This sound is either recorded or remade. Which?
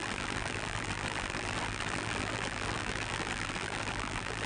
remade